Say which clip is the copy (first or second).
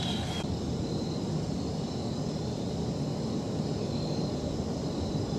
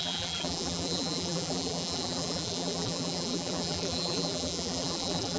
second